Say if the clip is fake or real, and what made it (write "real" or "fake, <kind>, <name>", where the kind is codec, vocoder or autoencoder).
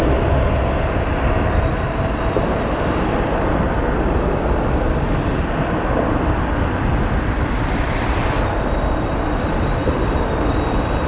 real